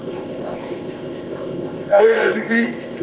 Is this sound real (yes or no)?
no